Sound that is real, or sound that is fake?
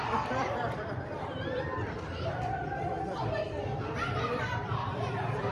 fake